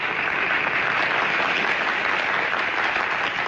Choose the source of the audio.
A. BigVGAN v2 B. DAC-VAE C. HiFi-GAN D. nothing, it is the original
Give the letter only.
D